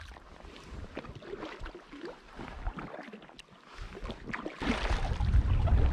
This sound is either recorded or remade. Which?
recorded